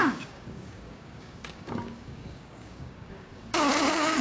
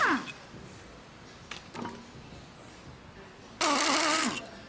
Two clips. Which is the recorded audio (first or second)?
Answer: second